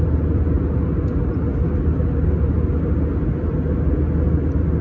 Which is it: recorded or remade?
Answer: recorded